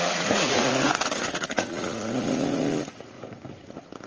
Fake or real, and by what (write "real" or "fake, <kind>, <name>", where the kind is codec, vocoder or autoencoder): fake, vocoder, Vocos